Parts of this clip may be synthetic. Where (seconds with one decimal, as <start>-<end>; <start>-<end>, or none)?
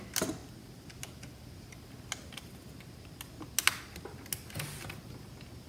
none